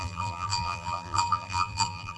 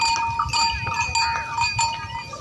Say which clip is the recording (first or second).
second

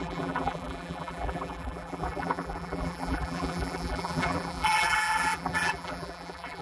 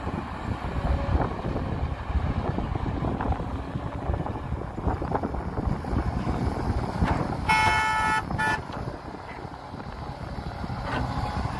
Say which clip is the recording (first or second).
second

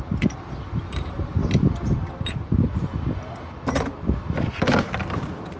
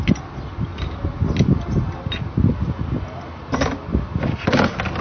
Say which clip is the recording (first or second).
second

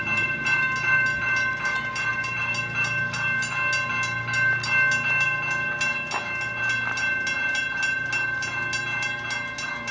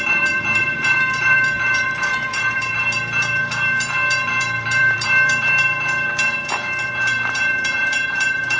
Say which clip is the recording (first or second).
first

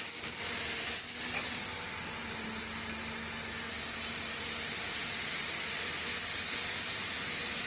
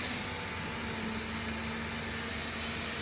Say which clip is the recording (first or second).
second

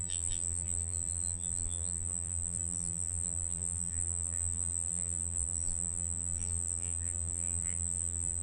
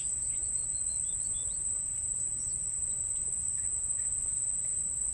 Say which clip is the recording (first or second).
second